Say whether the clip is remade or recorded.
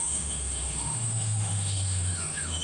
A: remade